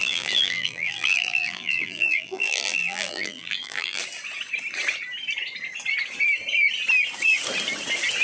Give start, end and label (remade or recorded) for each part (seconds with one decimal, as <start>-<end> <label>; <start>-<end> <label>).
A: 0.0-4.0 remade; 4.0-8.2 recorded